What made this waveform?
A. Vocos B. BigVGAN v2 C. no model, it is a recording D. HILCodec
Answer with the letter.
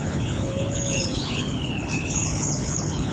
D